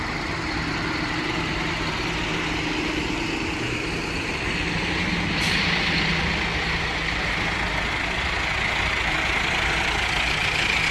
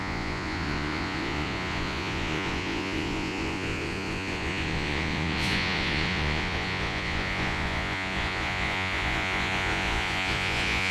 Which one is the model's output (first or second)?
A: second